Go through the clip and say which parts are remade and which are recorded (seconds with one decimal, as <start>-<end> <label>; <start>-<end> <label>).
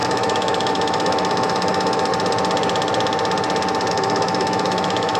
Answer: 0.0-2.1 remade; 2.1-3.9 recorded; 3.9-5.2 remade